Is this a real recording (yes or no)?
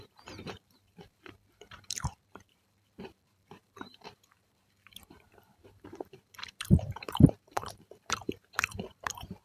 no